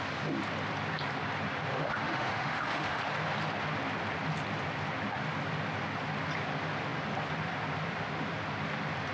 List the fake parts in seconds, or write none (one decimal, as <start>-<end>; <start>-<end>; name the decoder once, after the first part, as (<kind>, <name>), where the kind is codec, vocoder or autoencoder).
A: 1.7-3.0 (autoencoder, DAC-VAE)